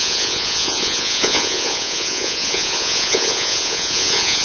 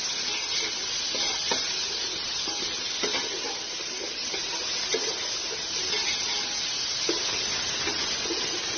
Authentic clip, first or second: second